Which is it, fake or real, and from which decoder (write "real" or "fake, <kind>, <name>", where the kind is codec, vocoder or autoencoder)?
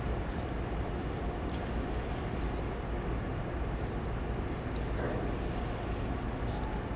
real